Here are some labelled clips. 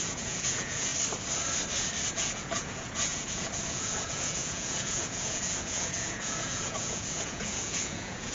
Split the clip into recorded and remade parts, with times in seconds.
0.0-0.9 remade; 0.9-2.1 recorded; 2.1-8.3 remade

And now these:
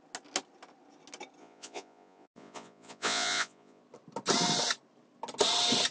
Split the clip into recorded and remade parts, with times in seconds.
0.0-1.4 recorded; 1.4-3.8 remade; 3.8-5.9 recorded

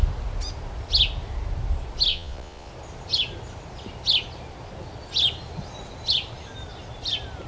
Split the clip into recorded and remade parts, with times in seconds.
0.0-2.1 recorded; 2.1-2.7 remade; 2.7-7.5 recorded